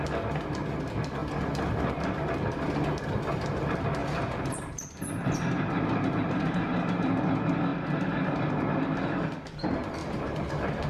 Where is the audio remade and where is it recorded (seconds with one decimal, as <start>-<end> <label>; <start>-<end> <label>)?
0.0-4.0 recorded; 4.0-7.2 remade; 7.2-10.0 recorded; 10.0-10.5 remade; 10.5-10.9 recorded